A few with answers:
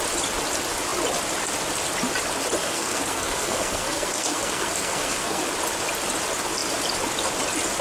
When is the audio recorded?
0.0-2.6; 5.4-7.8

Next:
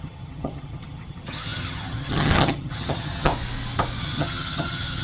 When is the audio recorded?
3.3-4.0

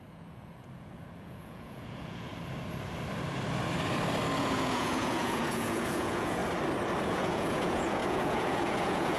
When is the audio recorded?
2.3-4.4; 6.4-7.0